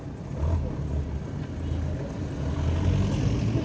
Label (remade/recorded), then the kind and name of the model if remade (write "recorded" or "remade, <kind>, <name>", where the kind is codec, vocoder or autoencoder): recorded